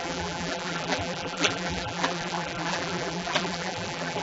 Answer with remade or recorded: remade